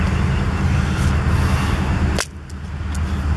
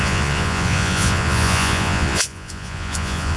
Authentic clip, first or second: first